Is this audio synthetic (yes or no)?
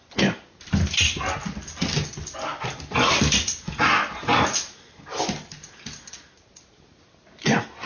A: no